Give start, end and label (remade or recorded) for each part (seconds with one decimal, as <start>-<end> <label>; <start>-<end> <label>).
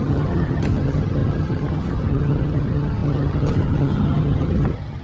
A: 0.0-5.0 remade